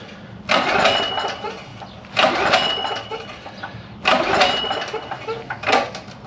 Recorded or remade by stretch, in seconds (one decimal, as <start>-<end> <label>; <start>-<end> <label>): 0.0-6.3 recorded

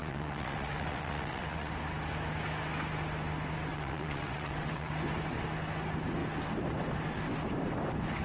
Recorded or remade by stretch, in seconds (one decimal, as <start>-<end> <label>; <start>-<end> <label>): 0.0-1.7 remade; 1.7-3.7 recorded; 3.7-4.9 remade; 4.9-8.2 recorded

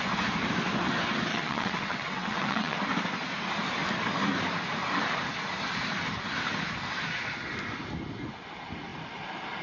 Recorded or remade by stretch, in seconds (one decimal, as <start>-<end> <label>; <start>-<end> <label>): 0.0-1.3 recorded; 1.3-2.8 remade; 2.8-9.6 recorded

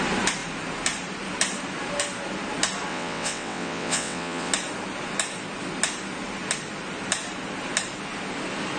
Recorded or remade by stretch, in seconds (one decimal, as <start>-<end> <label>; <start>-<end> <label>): 0.0-2.9 recorded; 2.9-4.5 remade; 4.5-8.8 recorded

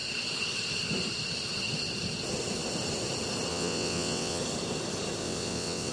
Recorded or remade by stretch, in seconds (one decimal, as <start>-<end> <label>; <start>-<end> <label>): 0.0-3.5 recorded; 3.5-4.4 remade; 4.4-5.2 recorded; 5.2-5.9 remade

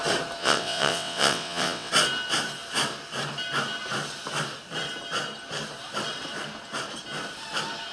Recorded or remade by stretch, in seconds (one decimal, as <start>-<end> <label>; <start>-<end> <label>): 0.0-0.4 recorded; 0.4-1.9 remade; 1.9-7.9 recorded

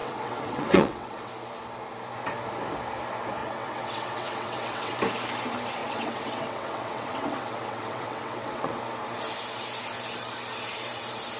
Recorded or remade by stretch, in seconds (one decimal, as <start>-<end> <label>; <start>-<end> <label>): 0.0-1.3 remade; 1.3-3.4 recorded; 3.4-5.0 remade; 5.0-5.8 recorded; 5.8-8.8 remade; 8.8-11.4 recorded